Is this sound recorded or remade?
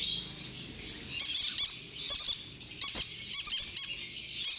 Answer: recorded